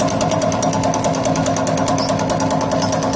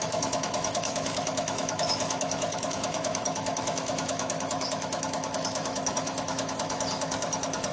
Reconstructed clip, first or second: second